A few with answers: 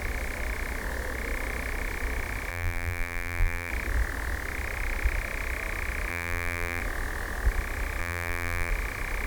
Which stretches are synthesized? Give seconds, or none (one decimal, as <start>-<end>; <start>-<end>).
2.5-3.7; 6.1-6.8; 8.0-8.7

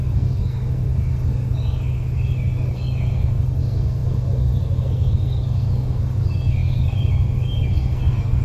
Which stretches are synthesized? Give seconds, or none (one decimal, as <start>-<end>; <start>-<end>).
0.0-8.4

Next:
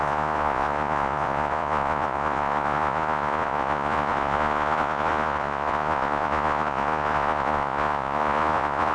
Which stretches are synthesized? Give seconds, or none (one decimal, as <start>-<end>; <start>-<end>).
0.0-8.9

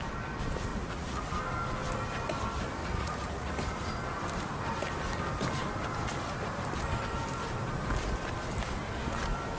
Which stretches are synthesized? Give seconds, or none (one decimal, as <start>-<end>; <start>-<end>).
0.7-1.4; 2.8-3.5

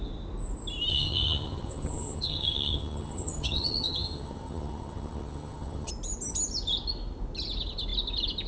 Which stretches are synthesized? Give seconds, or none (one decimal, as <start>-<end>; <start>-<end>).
0.9-5.9